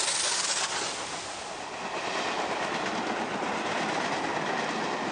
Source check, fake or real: real